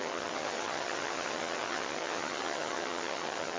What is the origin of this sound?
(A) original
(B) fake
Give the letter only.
B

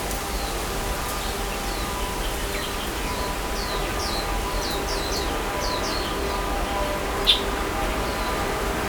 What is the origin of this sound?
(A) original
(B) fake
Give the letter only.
A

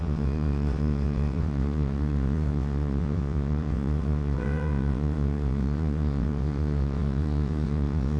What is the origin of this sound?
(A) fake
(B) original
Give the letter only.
A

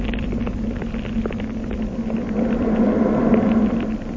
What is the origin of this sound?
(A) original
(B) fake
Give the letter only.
A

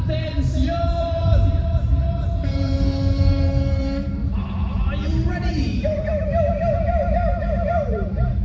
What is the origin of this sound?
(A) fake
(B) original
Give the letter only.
A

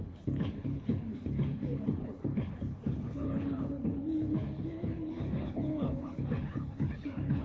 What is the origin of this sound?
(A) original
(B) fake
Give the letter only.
B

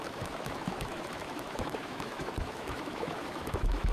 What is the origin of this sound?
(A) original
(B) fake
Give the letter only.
B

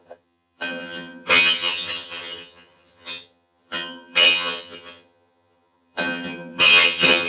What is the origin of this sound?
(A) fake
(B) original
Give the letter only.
A